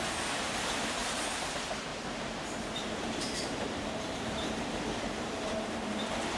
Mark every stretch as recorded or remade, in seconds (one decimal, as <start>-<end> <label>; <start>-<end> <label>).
0.0-1.0 recorded; 1.0-1.5 remade; 1.5-1.9 recorded; 1.9-5.7 remade; 5.7-6.4 recorded